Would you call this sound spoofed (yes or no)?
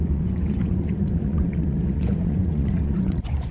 yes